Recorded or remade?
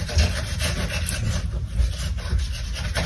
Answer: recorded